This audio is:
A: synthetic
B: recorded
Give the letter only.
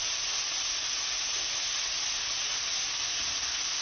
B